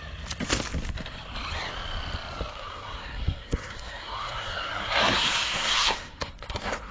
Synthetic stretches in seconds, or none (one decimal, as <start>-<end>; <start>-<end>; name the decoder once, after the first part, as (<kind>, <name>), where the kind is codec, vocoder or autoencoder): 2.5-6.9 (codec, SNAC)